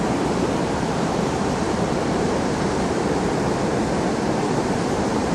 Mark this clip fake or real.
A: fake